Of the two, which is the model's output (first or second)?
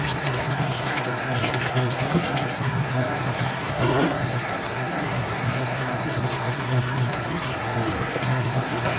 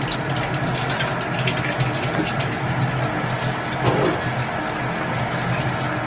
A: first